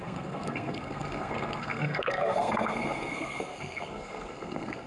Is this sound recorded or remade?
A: remade